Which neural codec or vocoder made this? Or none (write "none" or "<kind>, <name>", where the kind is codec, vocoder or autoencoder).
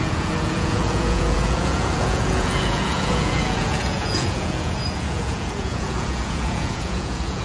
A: vocoder, Vocos